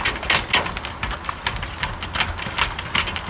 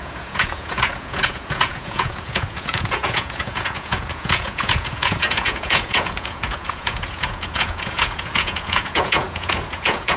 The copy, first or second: second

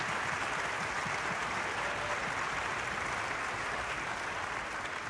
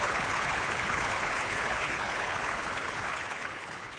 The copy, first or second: second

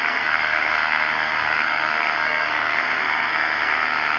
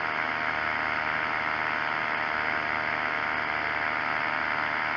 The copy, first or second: first